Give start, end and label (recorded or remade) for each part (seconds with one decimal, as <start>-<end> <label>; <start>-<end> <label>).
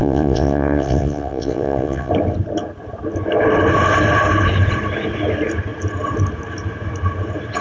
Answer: 0.0-2.1 remade; 2.1-7.6 recorded